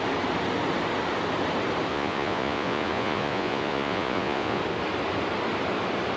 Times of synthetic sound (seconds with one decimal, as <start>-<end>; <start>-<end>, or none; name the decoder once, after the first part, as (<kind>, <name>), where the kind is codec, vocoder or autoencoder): 1.9-4.6 (vocoder, Vocos)